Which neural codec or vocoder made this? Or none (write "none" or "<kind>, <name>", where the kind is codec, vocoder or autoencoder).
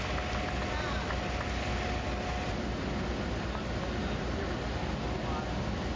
none